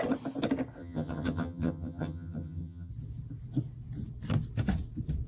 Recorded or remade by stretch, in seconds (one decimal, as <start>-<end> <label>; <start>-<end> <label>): 0.0-0.8 recorded; 0.8-2.9 remade; 2.9-5.3 recorded